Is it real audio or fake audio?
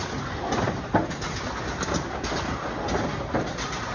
real